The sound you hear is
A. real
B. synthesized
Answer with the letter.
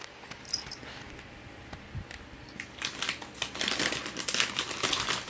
A